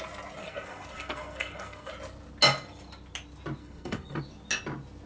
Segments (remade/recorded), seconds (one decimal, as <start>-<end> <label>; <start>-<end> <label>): 0.0-0.4 recorded; 0.4-1.9 remade; 1.9-3.6 recorded; 3.6-4.2 remade; 4.2-5.1 recorded